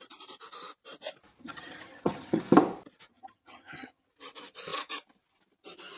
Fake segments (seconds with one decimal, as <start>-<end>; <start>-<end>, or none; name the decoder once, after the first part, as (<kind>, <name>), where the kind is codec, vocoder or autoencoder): 1.4-2.4 (vocoder, HiFi-GAN); 3.1-4.1